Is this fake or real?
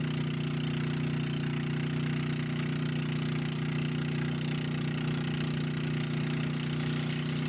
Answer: real